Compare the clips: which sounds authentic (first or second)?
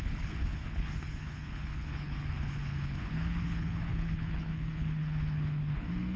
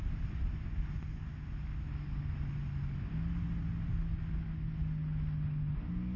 second